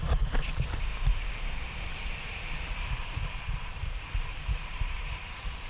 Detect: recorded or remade remade